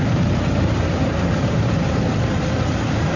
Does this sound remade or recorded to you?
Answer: remade